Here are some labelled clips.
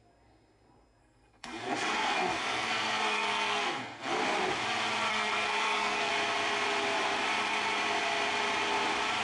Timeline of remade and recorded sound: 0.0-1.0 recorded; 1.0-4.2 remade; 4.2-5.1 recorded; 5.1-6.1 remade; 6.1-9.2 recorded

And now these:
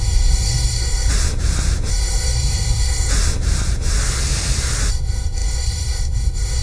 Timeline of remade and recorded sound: 0.0-1.1 remade; 1.1-1.9 recorded; 1.9-3.1 remade; 3.1-4.9 recorded; 4.9-6.6 remade

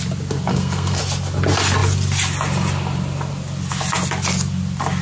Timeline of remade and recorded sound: 0.0-0.5 recorded; 0.5-1.0 remade; 1.0-5.0 recorded

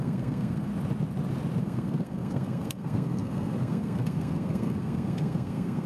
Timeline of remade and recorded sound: 0.0-0.7 remade; 0.7-1.6 recorded; 1.6-5.9 remade

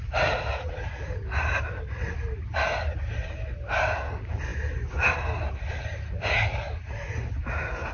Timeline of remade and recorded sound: 0.0-7.9 recorded